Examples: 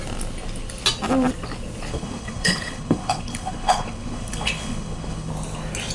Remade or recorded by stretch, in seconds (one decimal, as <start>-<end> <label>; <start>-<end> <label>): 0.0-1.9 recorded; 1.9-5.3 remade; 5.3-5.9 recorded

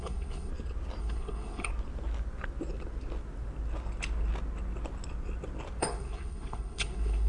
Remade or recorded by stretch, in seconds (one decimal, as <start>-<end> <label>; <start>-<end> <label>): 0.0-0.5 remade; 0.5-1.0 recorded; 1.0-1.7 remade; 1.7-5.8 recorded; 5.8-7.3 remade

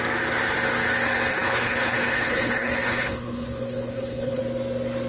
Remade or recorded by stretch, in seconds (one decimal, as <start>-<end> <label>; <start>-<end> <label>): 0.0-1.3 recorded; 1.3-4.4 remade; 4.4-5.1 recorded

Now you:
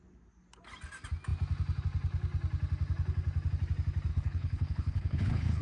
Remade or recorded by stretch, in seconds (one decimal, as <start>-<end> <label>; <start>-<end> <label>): 0.0-4.1 recorded; 4.1-5.6 remade

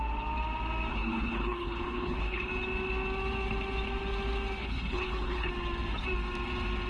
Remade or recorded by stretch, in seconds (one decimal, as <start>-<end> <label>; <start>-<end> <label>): 0.0-0.9 recorded; 0.9-2.5 remade; 2.5-4.6 recorded; 4.6-5.5 remade; 5.5-6.9 recorded